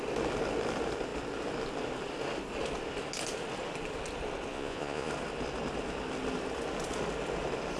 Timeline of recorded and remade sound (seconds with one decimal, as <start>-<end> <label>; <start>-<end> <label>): 0.0-4.5 recorded; 4.5-5.1 remade; 5.1-7.8 recorded